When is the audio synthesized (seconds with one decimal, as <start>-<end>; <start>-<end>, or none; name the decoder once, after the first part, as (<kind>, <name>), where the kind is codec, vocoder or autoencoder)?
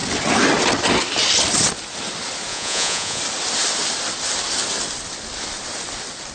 2.5-3.2 (vocoder, Vocos)